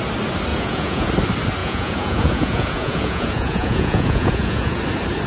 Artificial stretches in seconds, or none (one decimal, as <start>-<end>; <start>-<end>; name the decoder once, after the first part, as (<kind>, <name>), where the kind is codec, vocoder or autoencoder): 0.5-1.1 (vocoder, Vocos); 1.6-4.8